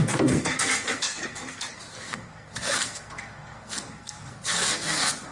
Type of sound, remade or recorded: remade